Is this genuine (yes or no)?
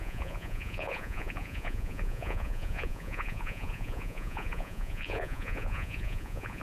no